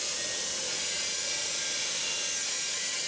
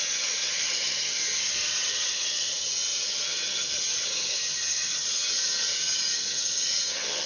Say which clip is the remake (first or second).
second